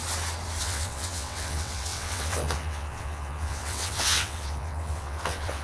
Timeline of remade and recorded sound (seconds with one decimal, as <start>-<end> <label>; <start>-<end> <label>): 0.0-0.6 recorded; 0.6-5.6 remade